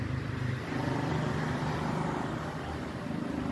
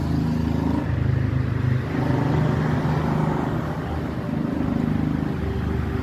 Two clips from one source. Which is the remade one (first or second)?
first